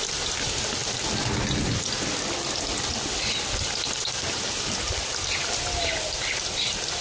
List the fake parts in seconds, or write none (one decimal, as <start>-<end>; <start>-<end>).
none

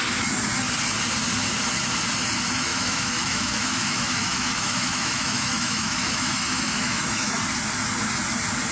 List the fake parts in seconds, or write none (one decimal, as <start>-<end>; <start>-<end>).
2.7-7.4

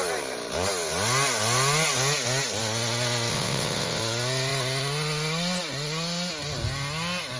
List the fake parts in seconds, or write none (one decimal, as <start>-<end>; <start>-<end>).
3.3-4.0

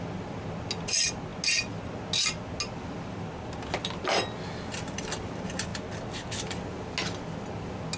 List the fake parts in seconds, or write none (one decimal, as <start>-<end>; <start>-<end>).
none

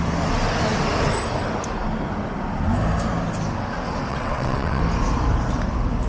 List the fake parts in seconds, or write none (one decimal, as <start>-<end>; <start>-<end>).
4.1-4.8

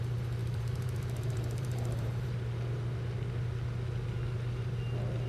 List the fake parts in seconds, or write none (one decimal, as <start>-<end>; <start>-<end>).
0.4-2.8